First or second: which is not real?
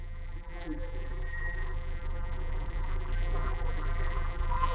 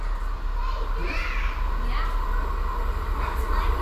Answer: first